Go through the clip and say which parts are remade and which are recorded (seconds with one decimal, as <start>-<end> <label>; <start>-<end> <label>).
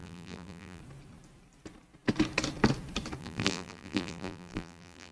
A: 0.0-0.8 remade; 0.8-3.2 recorded; 3.2-5.1 remade